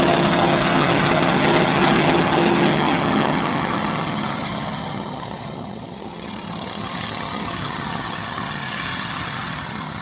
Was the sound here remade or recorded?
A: remade